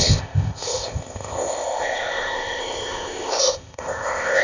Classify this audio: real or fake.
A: fake